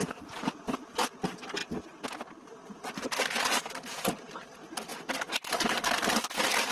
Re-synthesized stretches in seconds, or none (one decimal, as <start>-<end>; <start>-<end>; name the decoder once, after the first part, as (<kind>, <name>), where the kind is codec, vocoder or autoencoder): none